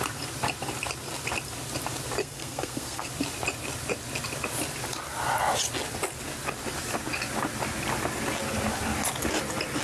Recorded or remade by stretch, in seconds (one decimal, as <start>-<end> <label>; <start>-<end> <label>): 0.0-2.2 recorded; 2.2-3.1 remade; 3.1-9.8 recorded